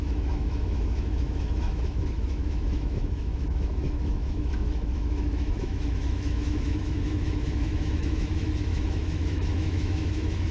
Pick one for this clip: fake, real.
fake